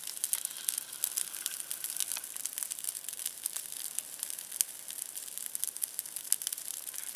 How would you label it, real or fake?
real